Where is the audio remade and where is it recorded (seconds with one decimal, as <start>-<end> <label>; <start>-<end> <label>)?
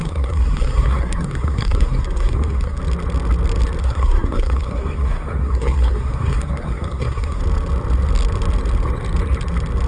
0.0-2.8 remade; 2.8-3.8 recorded; 3.8-7.4 remade; 7.4-9.9 recorded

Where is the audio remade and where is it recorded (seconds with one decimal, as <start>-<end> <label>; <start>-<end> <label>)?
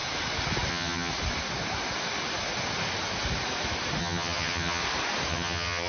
0.0-0.7 recorded; 0.7-1.1 remade; 1.1-4.0 recorded; 4.0-4.8 remade; 4.8-5.3 recorded; 5.3-5.9 remade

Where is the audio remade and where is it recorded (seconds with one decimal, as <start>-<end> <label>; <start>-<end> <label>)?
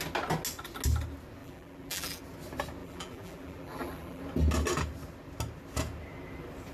0.0-1.4 recorded; 1.4-2.2 remade; 2.2-2.8 recorded; 2.8-4.2 remade; 4.2-6.7 recorded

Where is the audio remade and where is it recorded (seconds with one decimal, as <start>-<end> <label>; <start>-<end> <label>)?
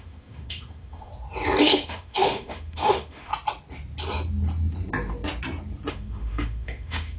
0.0-1.1 remade; 1.1-1.6 recorded; 1.6-3.3 remade; 3.3-5.9 recorded; 5.9-7.2 remade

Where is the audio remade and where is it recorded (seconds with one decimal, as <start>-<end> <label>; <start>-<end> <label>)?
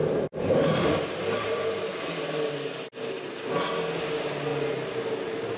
0.0-2.1 remade; 2.1-5.6 recorded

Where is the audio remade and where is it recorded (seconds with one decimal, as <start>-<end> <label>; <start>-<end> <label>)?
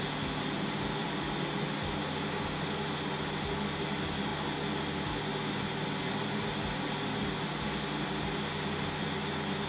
0.0-9.7 recorded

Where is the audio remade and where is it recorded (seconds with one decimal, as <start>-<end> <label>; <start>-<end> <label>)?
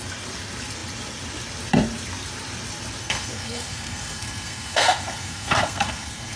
0.0-3.0 recorded; 3.0-6.4 remade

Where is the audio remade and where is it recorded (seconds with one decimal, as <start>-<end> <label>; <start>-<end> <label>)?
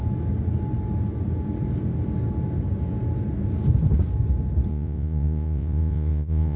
0.0-4.7 recorded; 4.7-6.6 remade